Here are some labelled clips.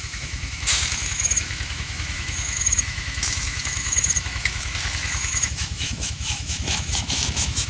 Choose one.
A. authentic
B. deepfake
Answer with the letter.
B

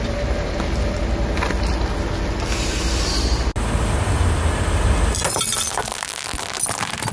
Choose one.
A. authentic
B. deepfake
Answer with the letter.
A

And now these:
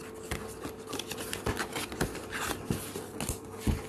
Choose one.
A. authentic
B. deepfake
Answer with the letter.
A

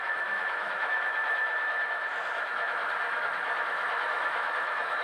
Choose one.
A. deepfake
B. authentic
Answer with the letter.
A